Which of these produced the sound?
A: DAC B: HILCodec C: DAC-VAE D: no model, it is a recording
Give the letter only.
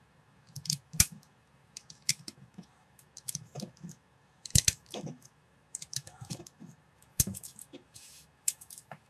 C